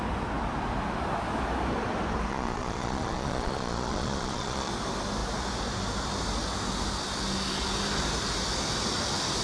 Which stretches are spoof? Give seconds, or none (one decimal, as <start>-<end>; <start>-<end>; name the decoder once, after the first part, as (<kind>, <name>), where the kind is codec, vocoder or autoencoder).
2.3-4.7 (vocoder, Vocos)